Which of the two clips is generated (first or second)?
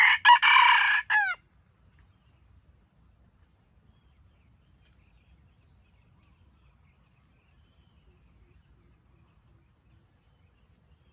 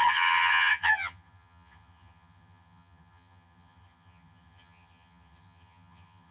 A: second